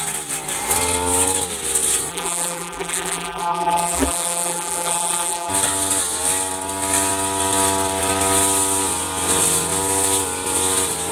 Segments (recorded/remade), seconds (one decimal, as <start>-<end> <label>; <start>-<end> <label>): 0.0-2.1 recorded; 2.1-5.5 remade; 5.5-11.1 recorded